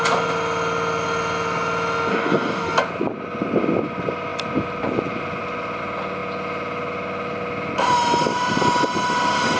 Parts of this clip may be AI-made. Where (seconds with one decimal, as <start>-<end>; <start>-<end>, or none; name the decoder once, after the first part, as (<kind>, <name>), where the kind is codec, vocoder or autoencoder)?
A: 2.1-2.7 (codec, DAC)